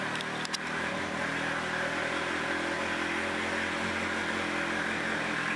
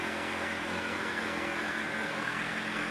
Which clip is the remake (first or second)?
second